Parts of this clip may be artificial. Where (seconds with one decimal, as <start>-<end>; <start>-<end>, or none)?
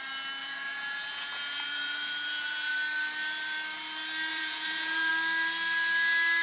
0.4-2.7; 4.3-5.1